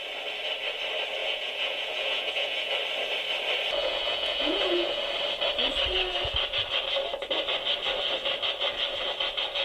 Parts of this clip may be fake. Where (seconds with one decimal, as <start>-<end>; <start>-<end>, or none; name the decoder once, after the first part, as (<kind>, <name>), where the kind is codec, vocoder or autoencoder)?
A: 1.2-2.7 (vocoder, Vocos); 3.8-5.0

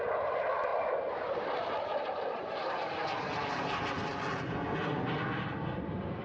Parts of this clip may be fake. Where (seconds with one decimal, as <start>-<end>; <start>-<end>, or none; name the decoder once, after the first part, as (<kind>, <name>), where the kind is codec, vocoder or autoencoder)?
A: none

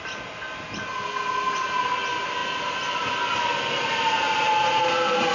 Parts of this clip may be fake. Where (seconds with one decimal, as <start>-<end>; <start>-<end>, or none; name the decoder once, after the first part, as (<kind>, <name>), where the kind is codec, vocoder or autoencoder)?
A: none

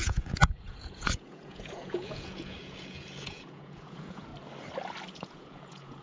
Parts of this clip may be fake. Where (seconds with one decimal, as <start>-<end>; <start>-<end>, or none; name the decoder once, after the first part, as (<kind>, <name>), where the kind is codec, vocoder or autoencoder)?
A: 0.0-4.3 (vocoder, Vocos); 5.1-6.0

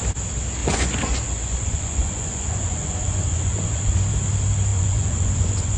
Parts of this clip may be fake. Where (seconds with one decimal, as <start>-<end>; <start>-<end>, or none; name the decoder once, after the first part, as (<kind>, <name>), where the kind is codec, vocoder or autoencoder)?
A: 0.6-4.1 (vocoder, Vocos); 4.7-5.8

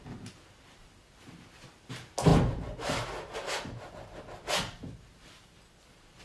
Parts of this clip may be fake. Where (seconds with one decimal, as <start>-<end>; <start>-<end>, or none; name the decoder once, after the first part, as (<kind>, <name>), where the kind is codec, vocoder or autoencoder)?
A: none

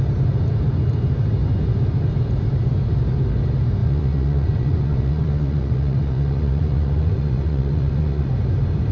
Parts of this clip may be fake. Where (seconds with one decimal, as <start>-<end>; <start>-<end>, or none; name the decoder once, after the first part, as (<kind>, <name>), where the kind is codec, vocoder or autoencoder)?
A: 3.8-8.3 (vocoder, Vocos)

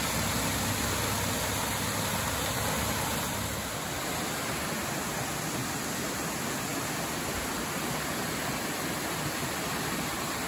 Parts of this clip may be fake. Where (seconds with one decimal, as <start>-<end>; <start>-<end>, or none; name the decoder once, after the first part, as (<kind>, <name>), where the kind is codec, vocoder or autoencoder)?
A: none